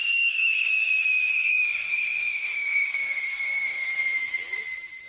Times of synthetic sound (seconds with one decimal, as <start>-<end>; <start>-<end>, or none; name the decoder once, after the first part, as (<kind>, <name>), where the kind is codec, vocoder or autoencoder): 0.0-0.7 (codec, DAC); 1.3-3.9